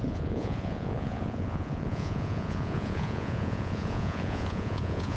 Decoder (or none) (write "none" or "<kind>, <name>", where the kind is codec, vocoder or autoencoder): vocoder, Vocos